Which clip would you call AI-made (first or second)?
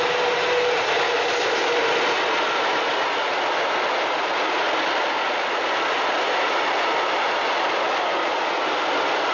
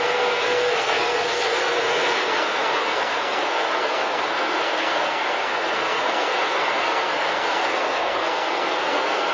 second